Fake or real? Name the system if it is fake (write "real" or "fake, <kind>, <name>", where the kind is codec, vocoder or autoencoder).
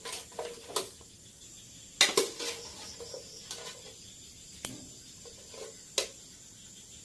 real